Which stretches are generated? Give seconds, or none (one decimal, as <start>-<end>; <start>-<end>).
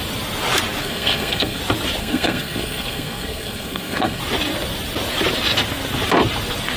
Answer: 0.8-1.6; 2.0-4.2